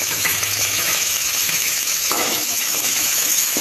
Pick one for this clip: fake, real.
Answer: fake